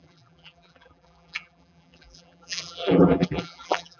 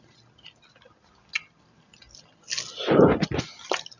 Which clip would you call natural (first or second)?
second